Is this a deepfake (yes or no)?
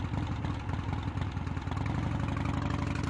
no